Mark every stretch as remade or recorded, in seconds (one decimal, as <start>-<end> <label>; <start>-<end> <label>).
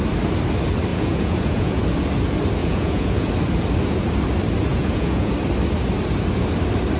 0.0-0.9 recorded; 0.9-1.8 remade; 1.8-2.6 recorded; 2.6-3.3 remade; 3.3-4.7 recorded; 4.7-5.3 remade; 5.3-7.0 recorded